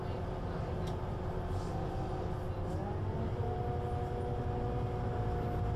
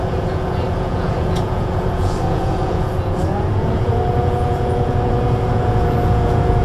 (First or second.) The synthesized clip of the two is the second